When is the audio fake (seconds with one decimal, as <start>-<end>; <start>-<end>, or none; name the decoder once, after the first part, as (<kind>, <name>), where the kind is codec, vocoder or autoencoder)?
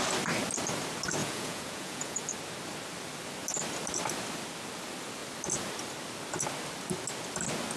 1.2-2.3 (vocoder, Vocos)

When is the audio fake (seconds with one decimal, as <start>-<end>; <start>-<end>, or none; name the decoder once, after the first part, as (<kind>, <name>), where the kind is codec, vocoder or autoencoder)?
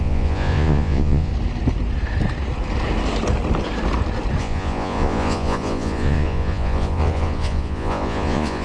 0.0-1.3 (vocoder, Vocos); 4.4-8.6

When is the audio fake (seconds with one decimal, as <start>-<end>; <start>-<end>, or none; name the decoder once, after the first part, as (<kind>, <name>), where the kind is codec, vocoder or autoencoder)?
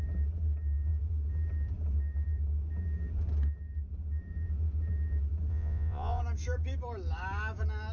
5.5-6.2 (vocoder, Vocos)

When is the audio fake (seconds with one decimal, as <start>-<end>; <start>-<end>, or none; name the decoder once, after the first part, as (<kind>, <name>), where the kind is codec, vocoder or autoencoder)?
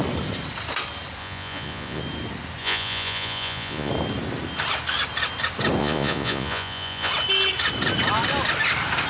1.2-2.0 (vocoder, Vocos); 2.6-3.9; 5.8-7.1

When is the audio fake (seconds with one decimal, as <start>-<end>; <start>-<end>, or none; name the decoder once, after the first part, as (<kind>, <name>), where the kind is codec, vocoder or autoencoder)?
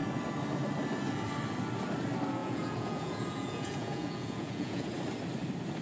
2.4-4.9 (vocoder, Vocos)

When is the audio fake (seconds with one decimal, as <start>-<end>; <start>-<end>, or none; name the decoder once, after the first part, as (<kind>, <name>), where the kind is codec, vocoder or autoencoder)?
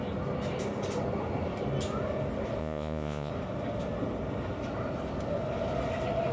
2.6-3.3 (vocoder, Vocos)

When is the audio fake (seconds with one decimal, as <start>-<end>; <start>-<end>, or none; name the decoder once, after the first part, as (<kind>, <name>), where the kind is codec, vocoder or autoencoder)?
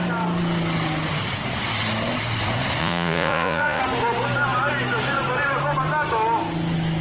2.8-3.8 (vocoder, Vocos)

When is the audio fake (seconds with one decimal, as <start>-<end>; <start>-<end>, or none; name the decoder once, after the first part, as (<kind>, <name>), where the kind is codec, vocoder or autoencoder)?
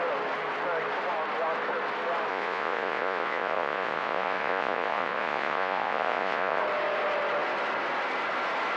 2.3-6.6 (vocoder, Vocos)